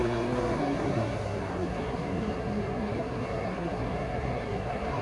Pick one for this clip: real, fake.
fake